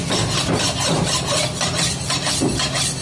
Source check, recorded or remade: recorded